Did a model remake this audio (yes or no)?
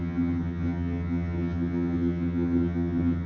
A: yes